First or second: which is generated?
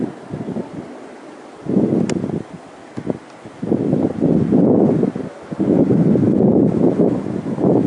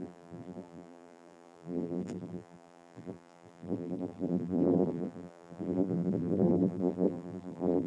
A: second